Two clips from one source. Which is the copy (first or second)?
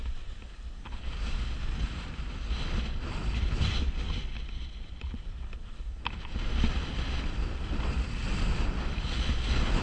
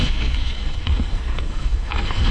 second